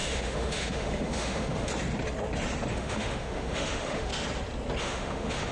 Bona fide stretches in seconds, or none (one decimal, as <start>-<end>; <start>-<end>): 1.7-2.7; 4.1-4.8